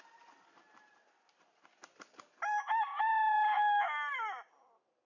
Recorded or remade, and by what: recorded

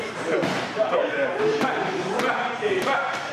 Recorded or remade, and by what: remade, vocoder, BigVGAN v2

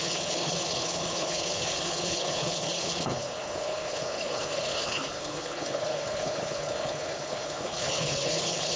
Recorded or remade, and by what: remade, codec, HILCodec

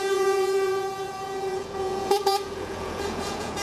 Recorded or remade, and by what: remade, vocoder, Vocos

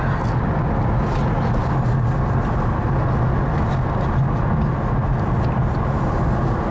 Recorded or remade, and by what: recorded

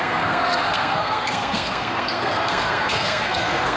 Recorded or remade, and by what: remade, codec, SNAC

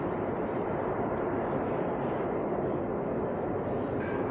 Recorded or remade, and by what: recorded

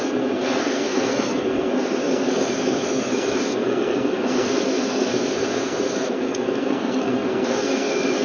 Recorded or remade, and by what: remade, codec, SNAC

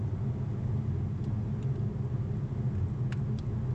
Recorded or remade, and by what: recorded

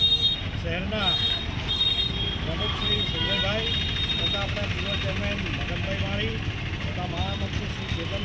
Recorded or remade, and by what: recorded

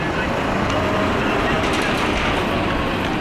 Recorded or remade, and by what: recorded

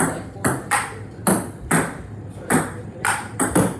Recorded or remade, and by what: recorded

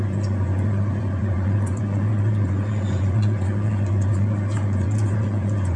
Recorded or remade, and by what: remade, vocoder, Vocos